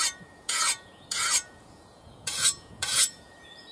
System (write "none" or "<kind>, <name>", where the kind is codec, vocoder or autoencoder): vocoder, Vocos